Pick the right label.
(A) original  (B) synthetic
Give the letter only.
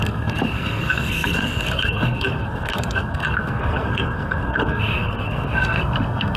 B